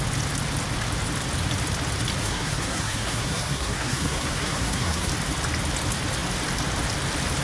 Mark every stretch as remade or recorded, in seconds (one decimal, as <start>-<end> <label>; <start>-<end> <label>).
0.0-2.2 recorded; 2.2-5.1 remade; 5.1-7.4 recorded